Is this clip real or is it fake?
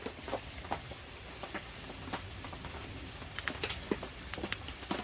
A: real